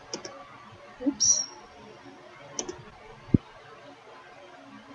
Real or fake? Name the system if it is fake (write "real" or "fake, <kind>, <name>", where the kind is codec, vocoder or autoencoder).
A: real